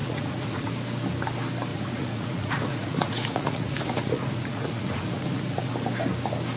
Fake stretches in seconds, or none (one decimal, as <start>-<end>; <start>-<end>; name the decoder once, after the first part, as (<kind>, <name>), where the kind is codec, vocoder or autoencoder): 0.0-0.7 (vocoder, Vocos); 1.7-5.7